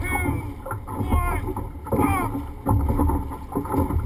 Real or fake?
real